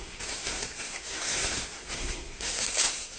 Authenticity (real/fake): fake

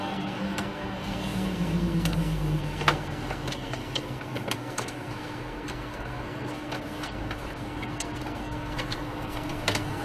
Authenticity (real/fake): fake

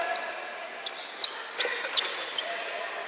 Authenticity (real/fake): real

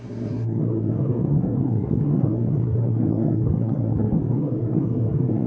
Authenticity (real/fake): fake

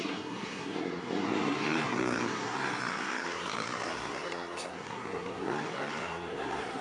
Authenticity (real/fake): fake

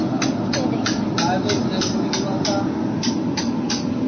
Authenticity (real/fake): real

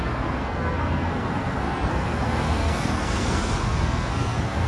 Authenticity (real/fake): fake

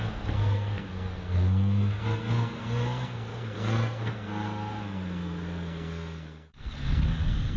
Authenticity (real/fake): fake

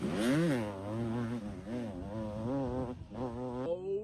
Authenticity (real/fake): real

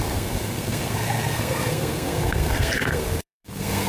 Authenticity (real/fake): fake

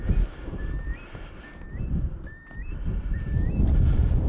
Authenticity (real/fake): real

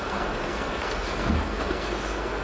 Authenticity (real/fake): fake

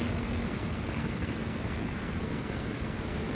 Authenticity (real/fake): fake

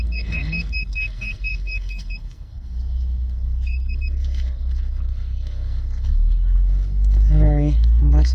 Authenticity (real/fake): fake